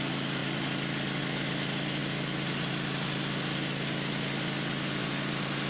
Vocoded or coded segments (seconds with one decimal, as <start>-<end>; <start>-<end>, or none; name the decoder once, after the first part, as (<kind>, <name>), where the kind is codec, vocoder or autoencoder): 5.0-5.7 (vocoder, BigVGAN v2)